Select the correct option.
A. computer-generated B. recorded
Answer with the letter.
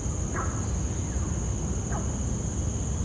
B